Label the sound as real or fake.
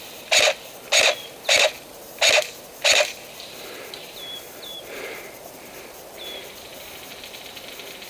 real